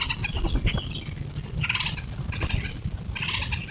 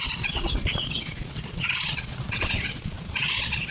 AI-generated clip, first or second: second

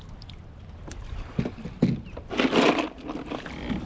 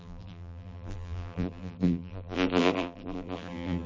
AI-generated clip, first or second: second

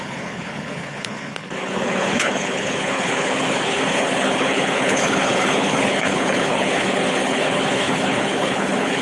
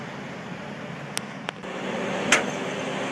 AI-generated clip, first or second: first